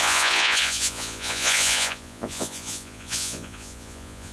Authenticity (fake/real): fake